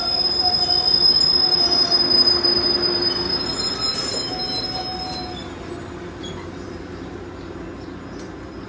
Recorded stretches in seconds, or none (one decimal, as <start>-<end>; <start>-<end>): 0.0-8.7